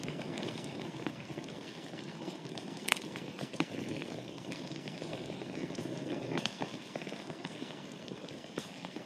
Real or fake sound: fake